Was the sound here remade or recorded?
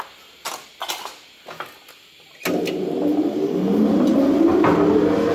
recorded